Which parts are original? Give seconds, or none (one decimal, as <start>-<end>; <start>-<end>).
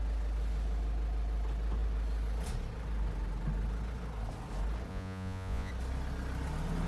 0.0-4.9; 5.7-6.9